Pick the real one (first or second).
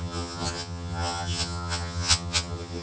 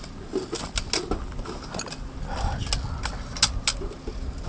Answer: second